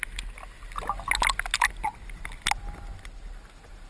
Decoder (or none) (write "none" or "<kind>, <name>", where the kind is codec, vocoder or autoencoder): none